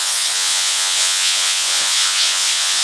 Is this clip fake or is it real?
fake